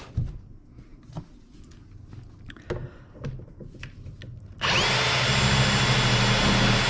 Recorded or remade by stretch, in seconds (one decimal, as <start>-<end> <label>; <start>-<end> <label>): 0.0-6.9 recorded